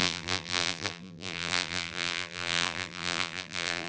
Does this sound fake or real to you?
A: fake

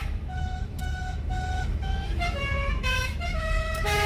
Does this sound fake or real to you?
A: fake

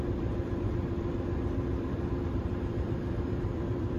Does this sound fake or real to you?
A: fake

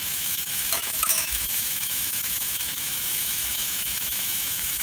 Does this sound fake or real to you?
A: fake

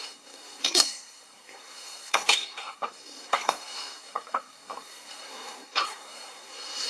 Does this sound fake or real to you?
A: fake